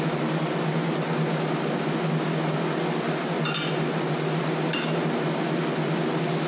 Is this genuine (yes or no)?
yes